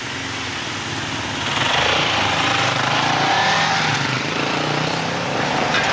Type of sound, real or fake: real